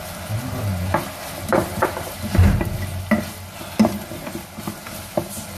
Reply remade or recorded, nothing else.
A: recorded